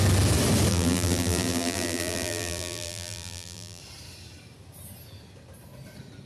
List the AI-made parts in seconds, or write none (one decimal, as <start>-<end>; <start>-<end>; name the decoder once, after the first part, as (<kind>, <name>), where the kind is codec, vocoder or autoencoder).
0.7-3.8 (vocoder, BigVGAN v2)